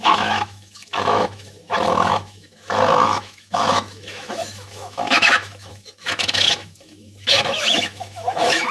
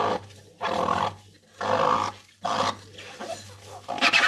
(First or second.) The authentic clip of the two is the second